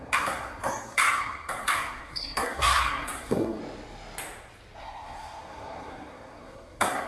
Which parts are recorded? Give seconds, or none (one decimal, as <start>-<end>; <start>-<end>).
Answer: 3.6-4.8